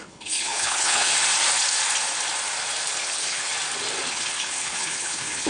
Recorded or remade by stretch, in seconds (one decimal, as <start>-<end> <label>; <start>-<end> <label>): 0.0-1.1 remade; 1.1-3.0 recorded; 3.0-3.5 remade; 3.5-4.1 recorded; 4.1-5.5 remade